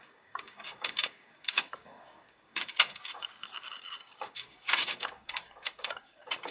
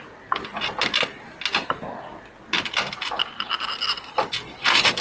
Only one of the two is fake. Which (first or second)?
first